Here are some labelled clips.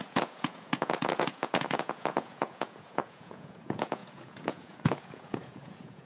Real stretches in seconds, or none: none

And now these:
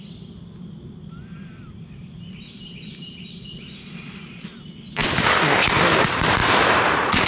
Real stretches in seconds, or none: 0.0-7.3

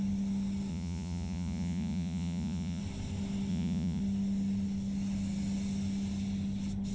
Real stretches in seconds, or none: 0.0-0.7; 2.8-3.5; 4.0-6.9

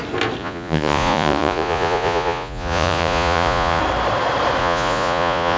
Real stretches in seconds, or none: 0.0-0.4; 3.8-4.6

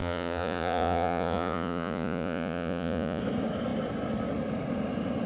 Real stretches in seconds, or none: 3.2-5.3